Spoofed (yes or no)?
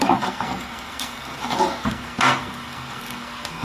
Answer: yes